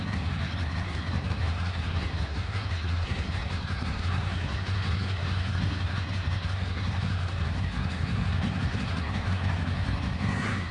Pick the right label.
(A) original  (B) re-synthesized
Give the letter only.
B